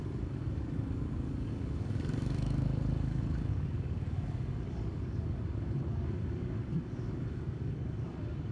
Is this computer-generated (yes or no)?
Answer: yes